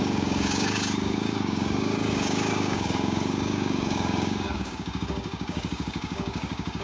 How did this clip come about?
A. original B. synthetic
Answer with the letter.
B